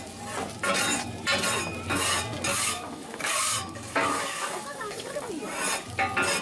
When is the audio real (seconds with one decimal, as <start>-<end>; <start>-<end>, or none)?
0.0-2.5; 5.3-6.4